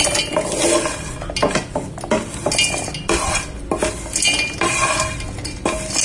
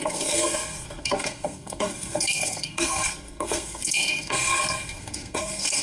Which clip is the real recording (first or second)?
first